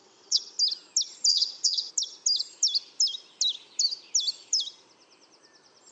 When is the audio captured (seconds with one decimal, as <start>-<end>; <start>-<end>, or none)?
0.6-1.3; 1.9-5.9